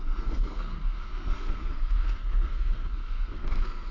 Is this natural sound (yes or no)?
no